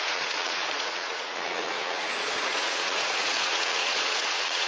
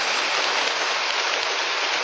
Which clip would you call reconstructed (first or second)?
first